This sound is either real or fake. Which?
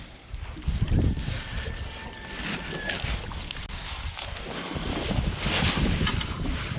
real